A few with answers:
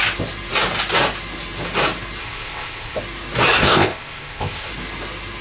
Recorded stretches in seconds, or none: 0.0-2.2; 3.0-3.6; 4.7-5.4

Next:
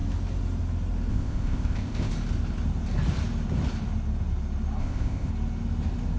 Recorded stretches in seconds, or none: 0.0-1.1; 2.1-4.8; 5.3-6.2

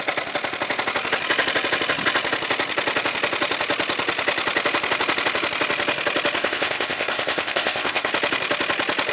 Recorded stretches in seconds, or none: 0.0-6.4; 8.1-9.1

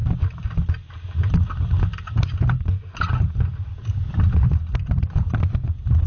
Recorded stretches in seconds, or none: 0.0-6.1

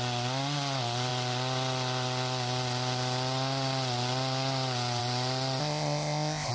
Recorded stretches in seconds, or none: 0.0-5.6